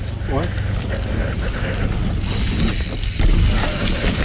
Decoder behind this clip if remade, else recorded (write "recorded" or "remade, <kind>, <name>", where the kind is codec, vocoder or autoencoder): recorded